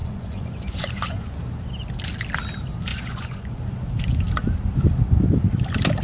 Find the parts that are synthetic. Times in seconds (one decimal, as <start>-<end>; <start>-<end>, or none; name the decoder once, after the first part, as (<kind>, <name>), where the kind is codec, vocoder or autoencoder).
0.0-1.4 (vocoder, Vocos); 2.9-3.6

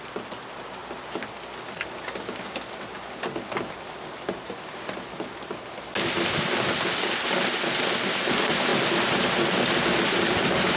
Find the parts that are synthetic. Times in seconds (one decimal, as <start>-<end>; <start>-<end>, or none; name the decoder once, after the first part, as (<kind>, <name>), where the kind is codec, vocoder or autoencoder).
none

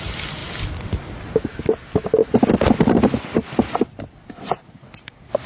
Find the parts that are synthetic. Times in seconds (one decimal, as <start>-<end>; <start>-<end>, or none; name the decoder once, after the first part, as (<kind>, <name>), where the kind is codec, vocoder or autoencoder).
none

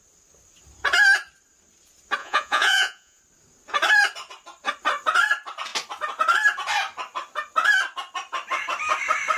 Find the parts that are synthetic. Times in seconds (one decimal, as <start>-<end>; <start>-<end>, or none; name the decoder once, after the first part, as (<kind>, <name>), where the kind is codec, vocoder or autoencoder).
2.2-3.2 (vocoder, Vocos)

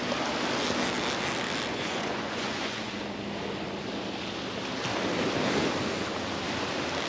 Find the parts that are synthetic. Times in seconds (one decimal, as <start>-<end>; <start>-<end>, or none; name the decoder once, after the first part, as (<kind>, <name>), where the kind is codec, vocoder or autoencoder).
1.7-3.0 (vocoder, Vocos)

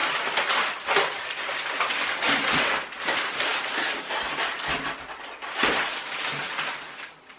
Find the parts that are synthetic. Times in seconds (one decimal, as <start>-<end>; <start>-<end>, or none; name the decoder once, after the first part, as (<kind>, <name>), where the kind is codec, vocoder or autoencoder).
none

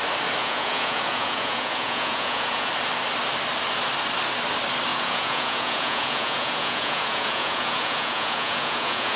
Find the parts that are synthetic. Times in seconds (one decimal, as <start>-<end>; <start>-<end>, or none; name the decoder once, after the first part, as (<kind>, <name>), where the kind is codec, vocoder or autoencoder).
0.4-2.7 (vocoder, Vocos); 4.9-9.2